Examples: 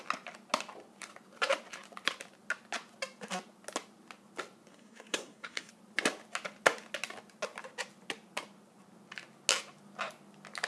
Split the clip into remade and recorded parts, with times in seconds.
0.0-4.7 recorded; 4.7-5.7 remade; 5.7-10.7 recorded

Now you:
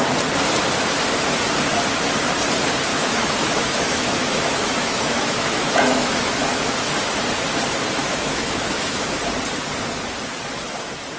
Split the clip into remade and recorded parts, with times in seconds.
0.0-2.9 recorded; 2.9-7.0 remade; 7.0-8.0 recorded; 8.0-9.2 remade; 9.2-11.2 recorded

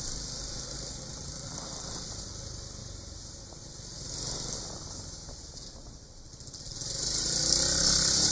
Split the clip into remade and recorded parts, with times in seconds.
0.0-8.3 recorded

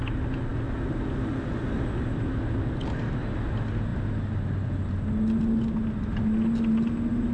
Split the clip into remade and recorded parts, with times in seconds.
0.0-7.3 recorded

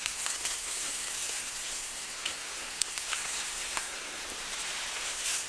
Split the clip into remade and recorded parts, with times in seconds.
0.0-4.2 remade; 4.2-4.9 recorded; 4.9-5.5 remade

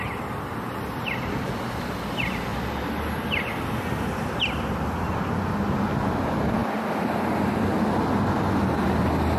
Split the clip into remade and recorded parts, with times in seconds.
0.0-9.4 recorded